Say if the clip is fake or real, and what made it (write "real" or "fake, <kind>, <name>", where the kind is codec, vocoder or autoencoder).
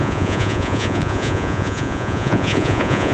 fake, vocoder, Vocos